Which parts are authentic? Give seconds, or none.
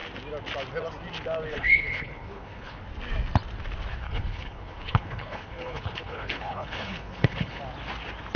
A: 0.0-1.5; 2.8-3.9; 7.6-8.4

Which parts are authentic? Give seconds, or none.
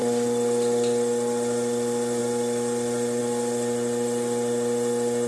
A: 0.0-5.3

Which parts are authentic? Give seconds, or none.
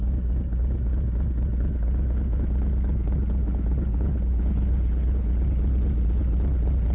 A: 0.0-3.4; 5.3-6.9